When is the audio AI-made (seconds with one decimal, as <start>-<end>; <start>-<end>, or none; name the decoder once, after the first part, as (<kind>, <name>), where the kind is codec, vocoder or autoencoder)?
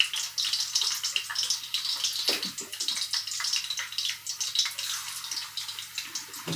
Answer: none